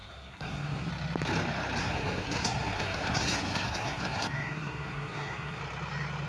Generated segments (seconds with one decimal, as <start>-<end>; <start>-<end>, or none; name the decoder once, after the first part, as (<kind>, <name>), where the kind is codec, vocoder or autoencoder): 0.0-0.9 (codec, SNAC); 1.8-5.6